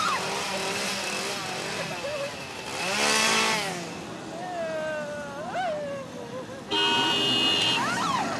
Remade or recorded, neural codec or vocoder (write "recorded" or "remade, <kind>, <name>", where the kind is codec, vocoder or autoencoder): recorded